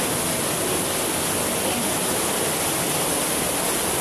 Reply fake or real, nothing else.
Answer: real